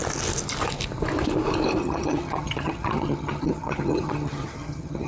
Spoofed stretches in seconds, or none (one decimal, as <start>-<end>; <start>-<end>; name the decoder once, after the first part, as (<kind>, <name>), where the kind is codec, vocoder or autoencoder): 1.8-5.1 (vocoder, HiFi-GAN)